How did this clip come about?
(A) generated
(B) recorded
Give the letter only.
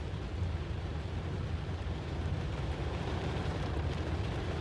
A